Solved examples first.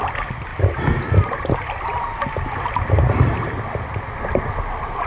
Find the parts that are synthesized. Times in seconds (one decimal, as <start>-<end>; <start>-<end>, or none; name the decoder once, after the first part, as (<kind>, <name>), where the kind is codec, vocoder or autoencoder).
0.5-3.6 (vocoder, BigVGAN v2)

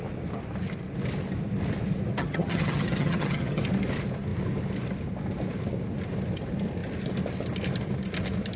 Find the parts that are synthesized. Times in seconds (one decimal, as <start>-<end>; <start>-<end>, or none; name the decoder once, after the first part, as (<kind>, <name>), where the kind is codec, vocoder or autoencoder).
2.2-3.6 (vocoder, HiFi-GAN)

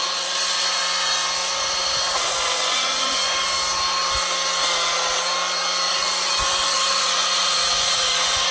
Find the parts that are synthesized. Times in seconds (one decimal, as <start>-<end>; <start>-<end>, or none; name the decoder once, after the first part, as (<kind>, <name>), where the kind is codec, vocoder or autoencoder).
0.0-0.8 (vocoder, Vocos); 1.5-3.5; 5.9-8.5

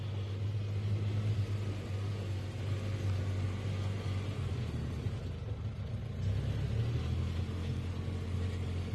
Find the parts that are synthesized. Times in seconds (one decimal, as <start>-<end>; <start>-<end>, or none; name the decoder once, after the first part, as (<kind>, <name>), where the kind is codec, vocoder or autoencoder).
none

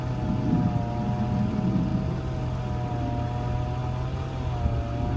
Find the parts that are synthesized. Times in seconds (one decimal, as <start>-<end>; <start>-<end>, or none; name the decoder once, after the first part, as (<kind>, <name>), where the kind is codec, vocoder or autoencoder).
none

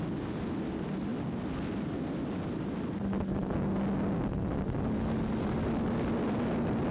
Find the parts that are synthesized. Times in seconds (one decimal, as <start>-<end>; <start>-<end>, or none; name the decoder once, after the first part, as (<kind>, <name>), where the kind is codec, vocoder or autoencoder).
none